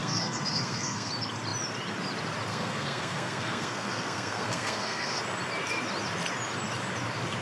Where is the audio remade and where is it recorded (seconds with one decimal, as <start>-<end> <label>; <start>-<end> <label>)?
0.0-1.1 remade; 1.1-2.5 recorded; 2.5-5.2 remade; 5.2-7.4 recorded